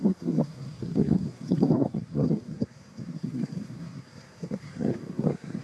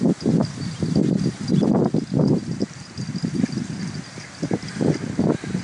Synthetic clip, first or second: first